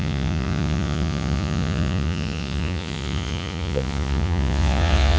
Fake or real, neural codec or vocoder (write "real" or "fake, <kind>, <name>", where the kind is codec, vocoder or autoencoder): fake, vocoder, Vocos